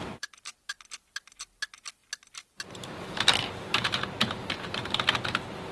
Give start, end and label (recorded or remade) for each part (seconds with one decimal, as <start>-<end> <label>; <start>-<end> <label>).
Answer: 0.0-0.7 recorded; 0.7-1.4 remade; 1.4-2.0 recorded; 2.0-5.7 remade